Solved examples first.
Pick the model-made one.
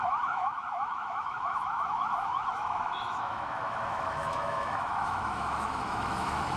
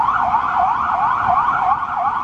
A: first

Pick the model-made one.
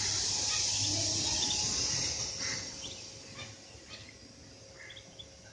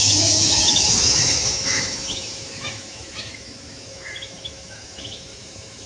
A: second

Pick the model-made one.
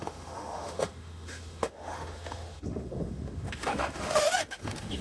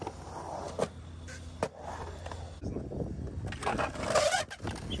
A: first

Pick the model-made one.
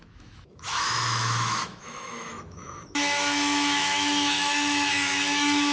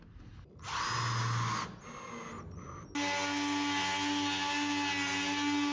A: first